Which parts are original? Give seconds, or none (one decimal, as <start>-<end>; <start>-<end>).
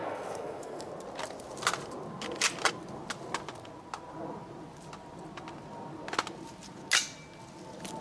0.9-8.0